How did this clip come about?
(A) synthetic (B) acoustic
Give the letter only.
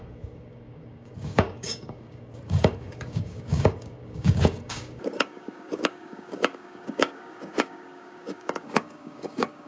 A